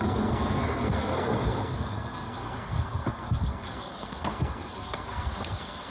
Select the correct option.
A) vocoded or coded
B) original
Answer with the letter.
A